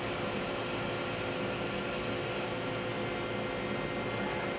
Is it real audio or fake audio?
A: real